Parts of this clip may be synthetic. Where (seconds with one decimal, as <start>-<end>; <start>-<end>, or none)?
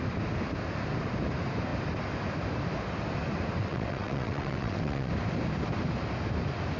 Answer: 3.6-5.1